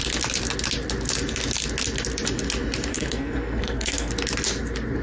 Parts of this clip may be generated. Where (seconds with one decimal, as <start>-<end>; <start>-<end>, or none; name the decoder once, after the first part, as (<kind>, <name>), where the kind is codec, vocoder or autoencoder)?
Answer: 2.9-4.1 (codec, SNAC)

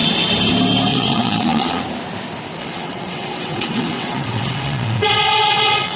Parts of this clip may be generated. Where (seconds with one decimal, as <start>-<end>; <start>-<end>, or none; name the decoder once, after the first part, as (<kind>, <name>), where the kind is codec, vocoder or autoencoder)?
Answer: 0.9-1.8 (vocoder, WaveNeXt); 2.6-6.0

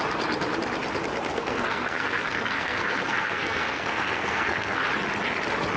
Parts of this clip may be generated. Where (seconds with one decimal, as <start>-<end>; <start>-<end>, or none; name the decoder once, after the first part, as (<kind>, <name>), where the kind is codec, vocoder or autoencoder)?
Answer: 1.3-4.8 (codec, SNAC)

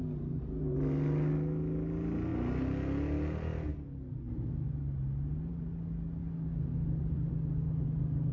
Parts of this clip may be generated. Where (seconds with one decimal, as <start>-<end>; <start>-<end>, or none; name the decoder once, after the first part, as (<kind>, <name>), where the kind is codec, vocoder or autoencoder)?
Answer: 6.2-7.3 (codec, DAC)

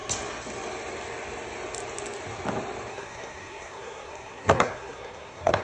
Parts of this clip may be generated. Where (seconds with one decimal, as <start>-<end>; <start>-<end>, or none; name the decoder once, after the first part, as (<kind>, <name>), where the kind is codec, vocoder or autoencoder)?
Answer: 2.9-5.6 (codec, SNAC)